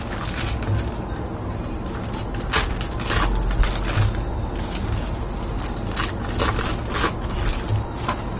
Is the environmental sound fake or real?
real